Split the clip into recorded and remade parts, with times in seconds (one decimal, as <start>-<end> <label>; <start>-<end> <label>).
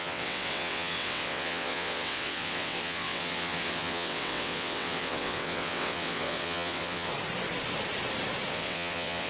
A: 0.0-7.1 remade; 7.1-8.5 recorded; 8.5-9.3 remade